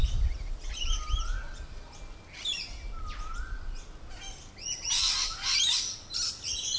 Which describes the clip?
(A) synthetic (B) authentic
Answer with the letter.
B